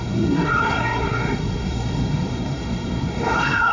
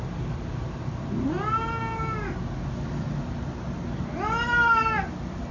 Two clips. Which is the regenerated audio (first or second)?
first